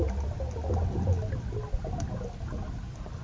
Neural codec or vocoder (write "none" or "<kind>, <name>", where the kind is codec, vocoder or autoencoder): none